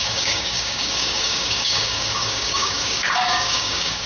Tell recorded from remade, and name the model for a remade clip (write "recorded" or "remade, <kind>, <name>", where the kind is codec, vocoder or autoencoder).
remade, codec, DAC